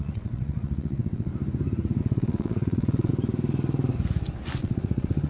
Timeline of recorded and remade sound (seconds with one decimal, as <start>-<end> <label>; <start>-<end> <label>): 0.0-1.3 remade; 1.3-2.0 recorded; 2.0-3.1 remade; 3.1-4.6 recorded; 4.6-5.3 remade